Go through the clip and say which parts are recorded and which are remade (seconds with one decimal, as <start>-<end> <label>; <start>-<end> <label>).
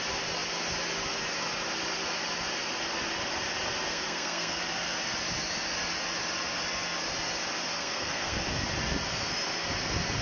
0.0-3.9 recorded; 3.9-4.6 remade; 4.6-7.7 recorded; 7.7-8.4 remade; 8.4-10.2 recorded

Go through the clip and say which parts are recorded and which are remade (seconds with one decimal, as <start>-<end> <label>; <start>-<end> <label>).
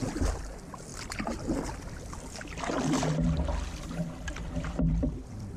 0.0-0.9 remade; 0.9-4.3 recorded; 4.3-5.6 remade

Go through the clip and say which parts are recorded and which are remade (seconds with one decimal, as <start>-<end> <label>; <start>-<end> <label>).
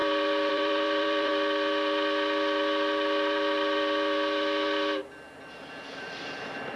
0.0-0.5 recorded; 0.5-1.3 remade; 1.3-5.4 recorded; 5.4-6.8 remade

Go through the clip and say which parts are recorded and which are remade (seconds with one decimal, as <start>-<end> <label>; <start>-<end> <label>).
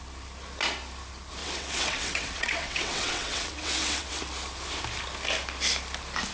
0.0-1.4 recorded; 1.4-4.2 remade; 4.2-6.3 recorded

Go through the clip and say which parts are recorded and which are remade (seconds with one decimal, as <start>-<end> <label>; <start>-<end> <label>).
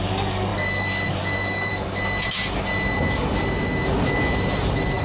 0.0-1.7 remade; 1.7-5.0 recorded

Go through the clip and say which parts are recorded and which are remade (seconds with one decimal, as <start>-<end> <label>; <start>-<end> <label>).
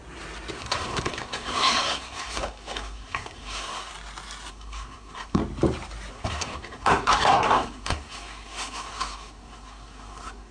0.0-0.6 recorded; 0.6-3.9 remade; 3.9-4.5 recorded; 4.5-5.4 remade; 5.4-6.1 recorded; 6.1-10.5 remade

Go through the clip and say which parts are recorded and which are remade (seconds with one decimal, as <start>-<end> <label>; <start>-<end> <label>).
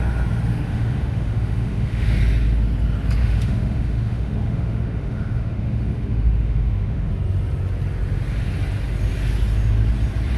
0.0-0.5 recorded; 0.5-2.2 remade; 2.2-3.2 recorded; 3.2-7.1 remade; 7.1-10.4 recorded